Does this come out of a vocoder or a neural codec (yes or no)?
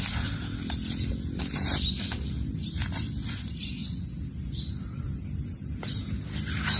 no